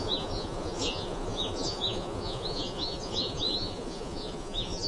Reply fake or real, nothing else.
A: fake